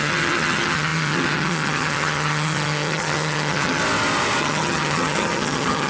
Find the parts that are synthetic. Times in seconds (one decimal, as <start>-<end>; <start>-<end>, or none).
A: 0.0-3.8; 4.4-5.9